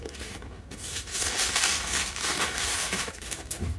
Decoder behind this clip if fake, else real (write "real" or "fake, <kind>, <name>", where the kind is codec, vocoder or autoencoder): fake, codec, DAC